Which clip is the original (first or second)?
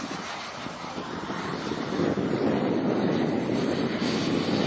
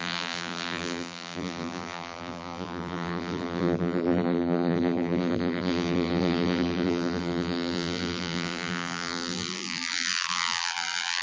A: first